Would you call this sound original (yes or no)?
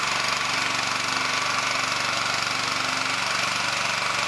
yes